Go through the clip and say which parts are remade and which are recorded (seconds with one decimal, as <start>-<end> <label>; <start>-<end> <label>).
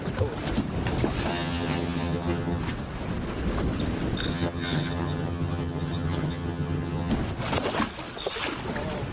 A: 0.0-1.3 recorded; 1.3-2.6 remade; 2.6-4.3 recorded; 4.3-7.1 remade; 7.1-9.1 recorded